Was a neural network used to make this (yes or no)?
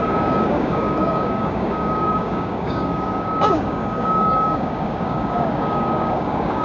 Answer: yes